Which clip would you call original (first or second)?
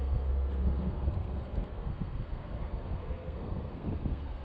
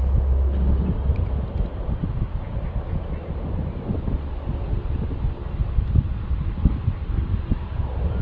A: second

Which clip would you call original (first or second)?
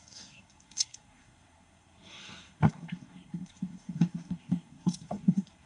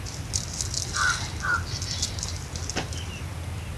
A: second